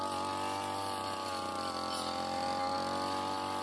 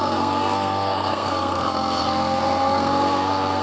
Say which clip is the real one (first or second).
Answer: first